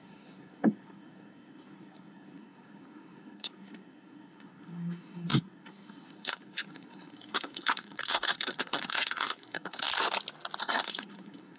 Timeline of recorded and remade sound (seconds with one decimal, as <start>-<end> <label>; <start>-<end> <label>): 0.0-9.9 remade; 9.9-10.6 recorded; 10.6-11.6 remade